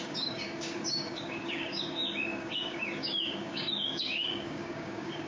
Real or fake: fake